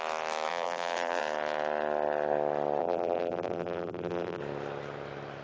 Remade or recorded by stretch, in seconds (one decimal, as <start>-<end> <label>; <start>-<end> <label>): 0.0-0.5 recorded; 0.5-1.2 remade; 1.2-2.8 recorded; 2.8-4.4 remade; 4.4-5.4 recorded

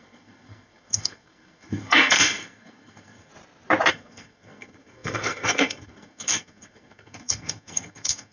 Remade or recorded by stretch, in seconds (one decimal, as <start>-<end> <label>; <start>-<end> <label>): 0.0-3.3 remade; 3.3-3.9 recorded; 3.9-8.3 remade

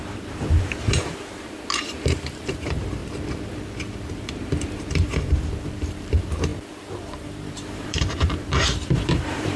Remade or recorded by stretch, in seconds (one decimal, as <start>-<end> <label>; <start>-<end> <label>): 0.0-3.0 remade; 3.0-4.4 recorded; 4.4-9.6 remade